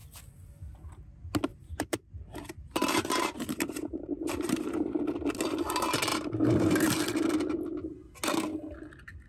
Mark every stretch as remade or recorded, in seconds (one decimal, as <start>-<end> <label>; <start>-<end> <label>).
0.0-1.5 recorded; 1.5-5.0 remade; 5.0-6.1 recorded; 6.1-6.9 remade; 6.9-9.3 recorded